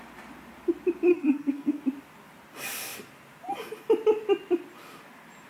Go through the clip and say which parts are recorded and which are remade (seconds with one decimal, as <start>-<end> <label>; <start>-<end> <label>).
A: 0.0-1.1 recorded; 1.1-1.8 remade; 1.8-5.5 recorded